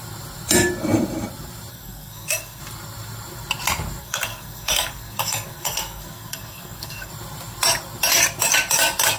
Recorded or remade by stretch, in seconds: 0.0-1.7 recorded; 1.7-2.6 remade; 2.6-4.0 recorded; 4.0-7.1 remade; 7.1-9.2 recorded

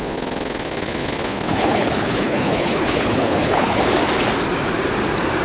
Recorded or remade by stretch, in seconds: 0.0-1.5 recorded; 1.5-3.8 remade; 3.8-5.4 recorded

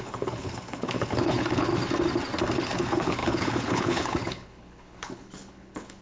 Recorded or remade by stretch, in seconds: 0.0-1.7 remade; 1.7-2.6 recorded; 2.6-6.0 remade